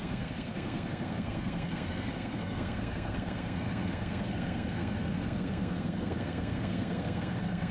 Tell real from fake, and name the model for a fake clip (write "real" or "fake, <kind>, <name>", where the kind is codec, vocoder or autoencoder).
fake, codec, SNAC